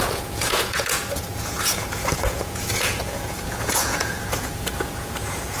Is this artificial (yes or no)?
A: yes